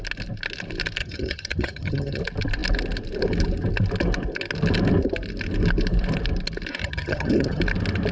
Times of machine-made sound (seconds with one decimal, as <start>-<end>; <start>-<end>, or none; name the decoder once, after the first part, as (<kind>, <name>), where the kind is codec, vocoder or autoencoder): 1.0-2.2 (vocoder, HiFi-GAN); 6.8-7.6